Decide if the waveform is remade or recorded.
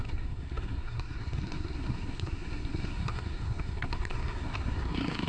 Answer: remade